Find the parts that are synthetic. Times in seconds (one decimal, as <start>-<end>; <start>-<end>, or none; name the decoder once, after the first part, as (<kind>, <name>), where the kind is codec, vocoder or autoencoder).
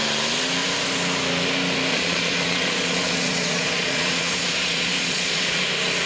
1.9-5.6 (vocoder, Vocos)